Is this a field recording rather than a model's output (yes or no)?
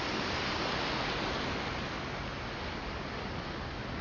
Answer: yes